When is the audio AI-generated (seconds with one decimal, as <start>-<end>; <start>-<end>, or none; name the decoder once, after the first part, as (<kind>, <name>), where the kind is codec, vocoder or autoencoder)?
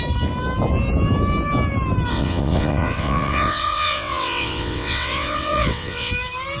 2.1-6.1 (vocoder, WaveNeXt)